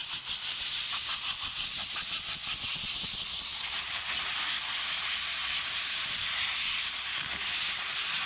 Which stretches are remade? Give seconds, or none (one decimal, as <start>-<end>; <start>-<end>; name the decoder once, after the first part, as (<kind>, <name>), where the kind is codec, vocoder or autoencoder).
none